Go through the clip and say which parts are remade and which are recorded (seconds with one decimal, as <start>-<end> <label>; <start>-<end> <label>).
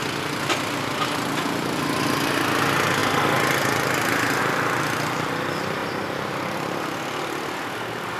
0.0-8.2 recorded